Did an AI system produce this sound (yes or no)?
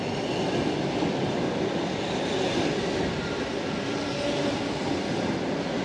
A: no